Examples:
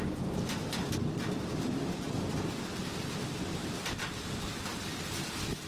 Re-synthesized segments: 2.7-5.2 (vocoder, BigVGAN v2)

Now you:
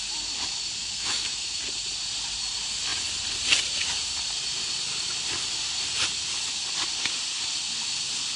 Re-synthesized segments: 0.8-1.6 (autoencoder, DAC-VAE)

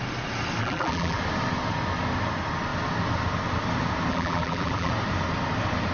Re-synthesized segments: 0.6-1.2 (vocoder, BigVGAN v2); 4.1-4.9